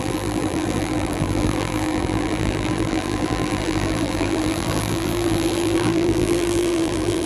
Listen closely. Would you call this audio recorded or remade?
remade